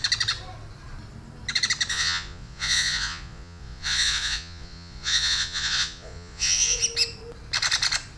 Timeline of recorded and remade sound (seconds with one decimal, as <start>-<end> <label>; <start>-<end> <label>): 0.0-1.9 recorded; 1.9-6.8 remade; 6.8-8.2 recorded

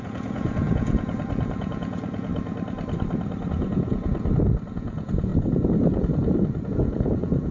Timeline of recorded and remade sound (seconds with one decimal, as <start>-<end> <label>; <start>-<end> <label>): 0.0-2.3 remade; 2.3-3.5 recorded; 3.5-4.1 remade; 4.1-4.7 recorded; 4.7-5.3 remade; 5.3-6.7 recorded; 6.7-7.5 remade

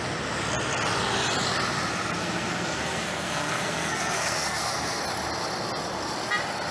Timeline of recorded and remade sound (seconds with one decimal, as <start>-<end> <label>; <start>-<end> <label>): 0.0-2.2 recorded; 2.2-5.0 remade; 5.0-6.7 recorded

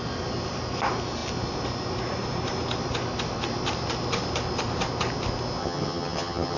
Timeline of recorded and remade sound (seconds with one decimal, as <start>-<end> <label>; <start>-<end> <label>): 0.0-5.6 recorded; 5.6-6.6 remade

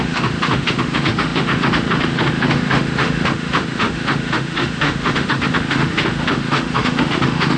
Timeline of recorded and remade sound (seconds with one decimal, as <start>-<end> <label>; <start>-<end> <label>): 0.0-7.6 remade

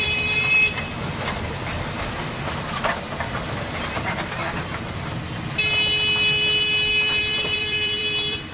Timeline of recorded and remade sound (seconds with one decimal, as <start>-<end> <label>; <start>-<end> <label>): 0.0-1.7 remade; 1.7-2.8 recorded; 2.8-4.4 remade; 4.4-6.9 recorded; 6.9-8.5 remade

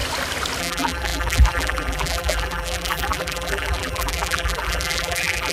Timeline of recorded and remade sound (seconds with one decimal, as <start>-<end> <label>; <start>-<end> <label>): 0.0-0.6 recorded; 0.6-5.5 remade

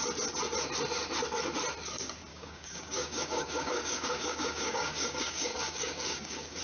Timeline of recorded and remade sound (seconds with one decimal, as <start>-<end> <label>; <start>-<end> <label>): 0.0-2.3 recorded; 2.3-6.6 remade